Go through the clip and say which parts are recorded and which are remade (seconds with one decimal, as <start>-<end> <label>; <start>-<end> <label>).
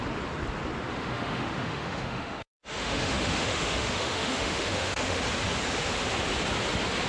0.0-0.9 recorded; 0.9-5.2 remade; 5.2-7.1 recorded